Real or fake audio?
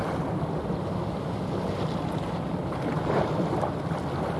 real